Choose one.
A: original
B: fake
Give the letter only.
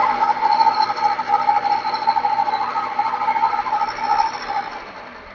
A